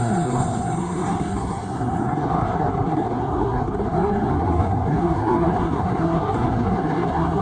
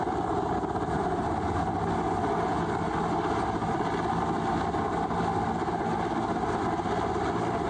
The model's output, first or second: first